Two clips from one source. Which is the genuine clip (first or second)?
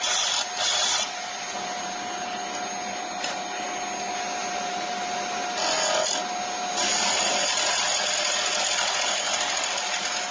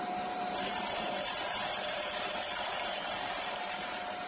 first